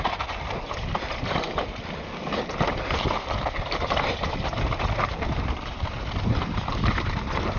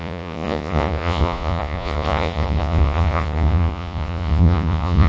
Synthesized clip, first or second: second